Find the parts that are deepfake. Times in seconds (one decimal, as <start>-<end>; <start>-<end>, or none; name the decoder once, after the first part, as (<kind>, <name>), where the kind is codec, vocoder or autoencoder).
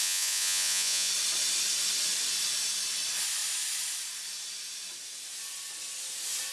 0.0-1.1 (vocoder, Vocos)